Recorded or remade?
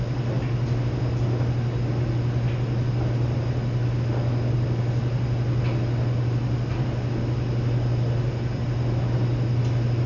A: recorded